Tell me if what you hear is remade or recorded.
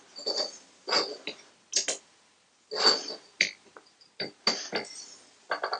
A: recorded